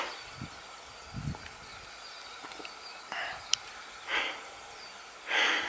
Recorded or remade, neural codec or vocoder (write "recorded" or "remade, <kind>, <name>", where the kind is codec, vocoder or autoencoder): recorded